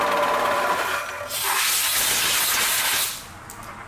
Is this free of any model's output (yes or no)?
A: yes